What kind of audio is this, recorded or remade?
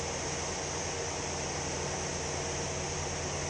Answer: recorded